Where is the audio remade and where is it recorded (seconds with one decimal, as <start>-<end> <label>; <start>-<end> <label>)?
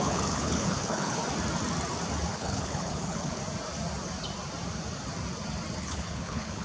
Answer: 0.0-1.2 remade; 1.2-2.3 recorded; 2.3-3.4 remade; 3.4-5.8 recorded; 5.8-6.6 remade